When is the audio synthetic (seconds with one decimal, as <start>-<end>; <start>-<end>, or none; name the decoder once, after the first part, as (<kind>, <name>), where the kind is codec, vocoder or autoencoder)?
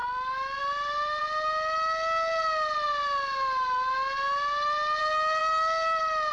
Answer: none